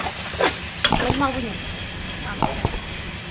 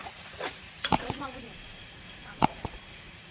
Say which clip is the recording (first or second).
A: first